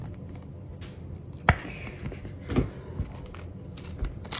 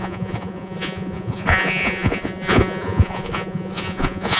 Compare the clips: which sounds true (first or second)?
first